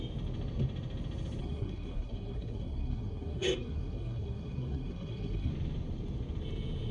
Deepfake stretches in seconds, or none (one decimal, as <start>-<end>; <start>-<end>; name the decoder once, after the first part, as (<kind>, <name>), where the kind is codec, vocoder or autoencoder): 1.4-5.5 (codec, SNAC)